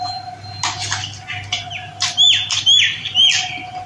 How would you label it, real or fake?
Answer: real